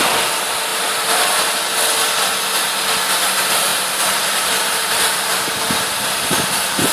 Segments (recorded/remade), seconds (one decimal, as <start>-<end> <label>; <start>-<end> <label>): 0.0-0.7 recorded; 0.7-1.5 remade; 1.5-3.7 recorded; 3.7-5.6 remade; 5.6-6.9 recorded